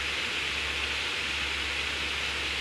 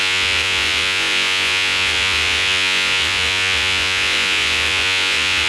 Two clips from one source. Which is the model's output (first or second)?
second